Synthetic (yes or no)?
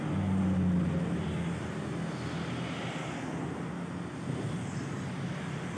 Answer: no